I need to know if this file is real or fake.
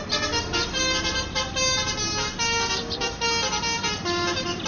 real